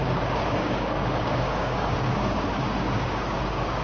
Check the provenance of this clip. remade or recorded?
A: remade